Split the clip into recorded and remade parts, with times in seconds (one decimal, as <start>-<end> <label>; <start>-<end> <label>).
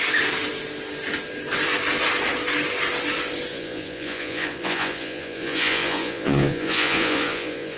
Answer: 0.0-3.5 recorded; 3.5-7.8 remade